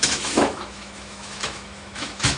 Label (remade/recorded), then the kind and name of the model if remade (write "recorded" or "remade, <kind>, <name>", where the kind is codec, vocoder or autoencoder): remade, autoencoder, DAC-VAE